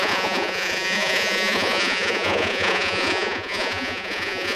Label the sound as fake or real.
fake